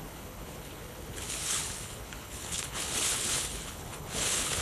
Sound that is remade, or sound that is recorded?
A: remade